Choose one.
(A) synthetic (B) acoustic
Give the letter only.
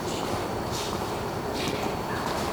B